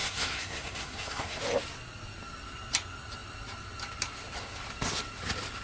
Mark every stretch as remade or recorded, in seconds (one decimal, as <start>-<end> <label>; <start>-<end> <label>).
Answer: 0.0-1.4 remade; 1.4-5.6 recorded